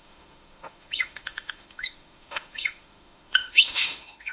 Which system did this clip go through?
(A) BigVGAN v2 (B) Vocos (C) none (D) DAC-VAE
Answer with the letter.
D